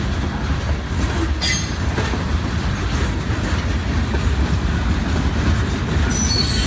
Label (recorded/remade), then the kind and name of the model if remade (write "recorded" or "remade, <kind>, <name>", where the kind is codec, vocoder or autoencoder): recorded